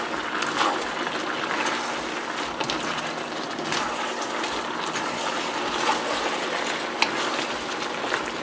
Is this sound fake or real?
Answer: real